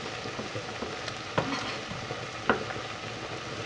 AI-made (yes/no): no